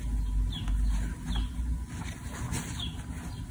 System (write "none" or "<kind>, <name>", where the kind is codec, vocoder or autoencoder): none